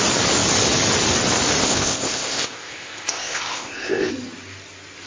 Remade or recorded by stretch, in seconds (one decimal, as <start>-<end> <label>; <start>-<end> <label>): 0.0-1.6 recorded; 1.6-4.1 remade; 4.1-5.1 recorded